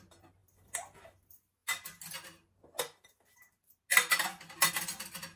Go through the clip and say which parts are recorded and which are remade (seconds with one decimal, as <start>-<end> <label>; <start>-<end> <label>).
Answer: 0.0-5.4 recorded